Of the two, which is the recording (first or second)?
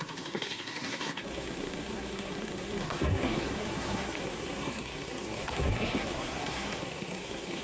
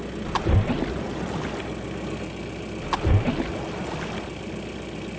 second